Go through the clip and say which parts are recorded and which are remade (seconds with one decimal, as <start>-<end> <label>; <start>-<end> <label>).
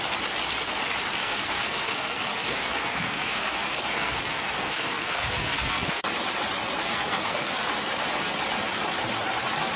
0.0-1.2 recorded; 1.2-6.0 remade; 6.0-6.8 recorded; 6.8-7.7 remade; 7.7-9.8 recorded